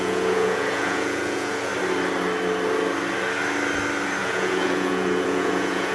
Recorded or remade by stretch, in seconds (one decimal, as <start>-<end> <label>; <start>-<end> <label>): 0.0-1.7 remade; 1.7-4.2 recorded; 4.2-5.9 remade